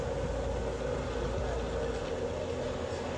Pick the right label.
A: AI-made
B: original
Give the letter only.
B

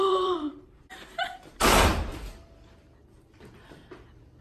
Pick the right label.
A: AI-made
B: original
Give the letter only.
A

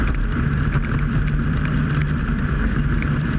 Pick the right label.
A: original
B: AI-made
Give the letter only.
B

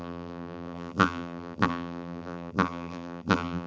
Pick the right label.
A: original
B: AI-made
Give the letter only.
B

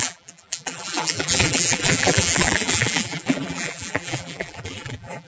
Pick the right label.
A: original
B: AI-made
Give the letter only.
B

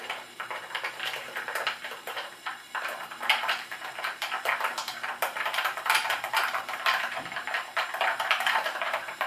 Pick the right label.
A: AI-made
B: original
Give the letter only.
A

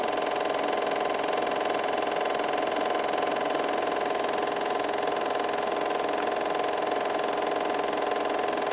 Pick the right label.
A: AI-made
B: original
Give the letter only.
B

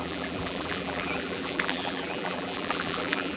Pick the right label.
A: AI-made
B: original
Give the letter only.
A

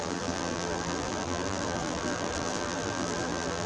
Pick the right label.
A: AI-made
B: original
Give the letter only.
A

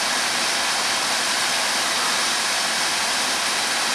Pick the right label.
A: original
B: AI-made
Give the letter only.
A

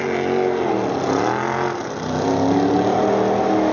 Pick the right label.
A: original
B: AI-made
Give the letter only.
A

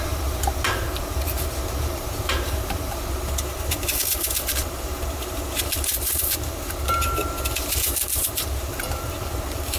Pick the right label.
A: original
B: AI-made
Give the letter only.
B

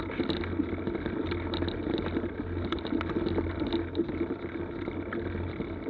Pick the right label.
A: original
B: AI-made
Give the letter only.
A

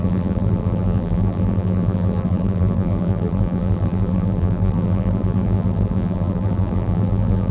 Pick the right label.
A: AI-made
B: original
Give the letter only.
A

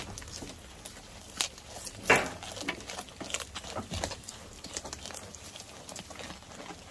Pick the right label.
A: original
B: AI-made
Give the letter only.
A